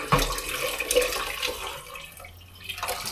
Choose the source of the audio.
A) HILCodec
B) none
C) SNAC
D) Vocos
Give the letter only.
B